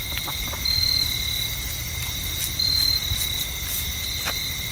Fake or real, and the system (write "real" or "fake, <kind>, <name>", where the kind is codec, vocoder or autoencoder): real